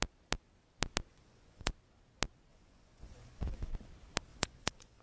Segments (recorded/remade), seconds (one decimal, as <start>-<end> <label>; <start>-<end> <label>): 0.0-1.1 recorded; 1.1-1.7 remade; 1.7-2.5 recorded; 2.5-3.7 remade; 3.7-4.3 recorded; 4.3-5.0 remade